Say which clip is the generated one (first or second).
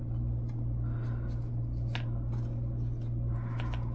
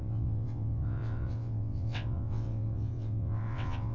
second